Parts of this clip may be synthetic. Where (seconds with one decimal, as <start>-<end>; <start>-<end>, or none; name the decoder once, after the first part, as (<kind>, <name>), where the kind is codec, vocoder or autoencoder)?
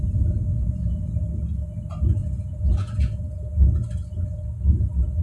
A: 0.5-1.1 (vocoder, Vocos); 2.2-3.2